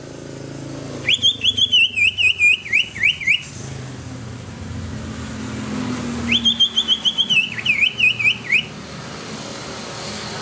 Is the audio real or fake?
real